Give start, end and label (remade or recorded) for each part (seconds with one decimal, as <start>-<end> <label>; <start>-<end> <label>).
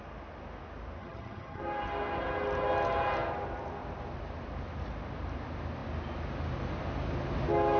0.0-1.0 recorded; 1.0-1.6 remade; 1.6-7.8 recorded